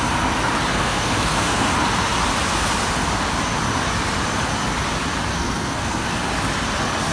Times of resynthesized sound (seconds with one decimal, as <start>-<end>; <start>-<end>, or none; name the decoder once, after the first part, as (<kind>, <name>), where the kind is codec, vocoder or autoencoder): 0.7-1.7 (codec, SNAC); 5.3-6.2